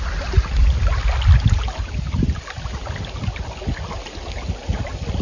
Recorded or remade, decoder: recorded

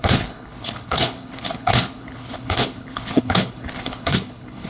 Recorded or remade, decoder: remade, codec, HILCodec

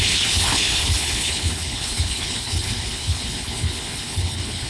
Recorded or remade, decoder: remade, codec, HILCodec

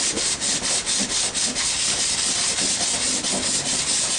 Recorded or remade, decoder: recorded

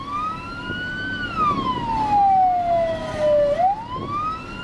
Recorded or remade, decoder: recorded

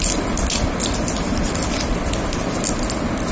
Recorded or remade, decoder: recorded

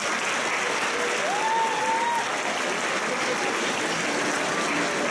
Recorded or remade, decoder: recorded